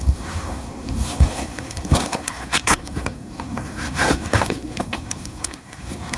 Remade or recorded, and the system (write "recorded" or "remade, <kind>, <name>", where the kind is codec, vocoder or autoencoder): remade, codec, SNAC